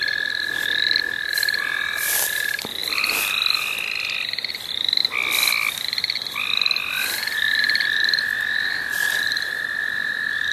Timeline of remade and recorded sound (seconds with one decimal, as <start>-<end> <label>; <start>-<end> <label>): 0.0-10.5 recorded